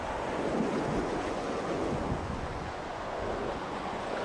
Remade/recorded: remade